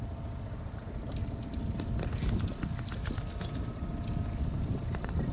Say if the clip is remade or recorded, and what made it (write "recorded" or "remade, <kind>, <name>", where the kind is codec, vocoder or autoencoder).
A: recorded